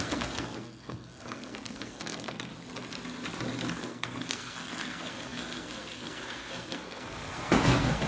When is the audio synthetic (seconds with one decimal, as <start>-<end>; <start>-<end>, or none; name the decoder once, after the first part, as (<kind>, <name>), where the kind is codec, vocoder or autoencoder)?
0.0-2.5 (codec, SNAC); 3.8-8.1